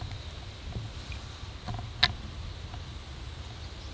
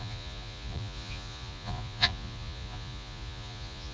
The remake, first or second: second